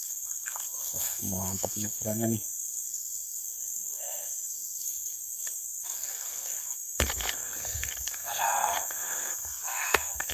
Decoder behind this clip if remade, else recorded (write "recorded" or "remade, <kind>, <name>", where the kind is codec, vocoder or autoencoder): remade, codec, SNAC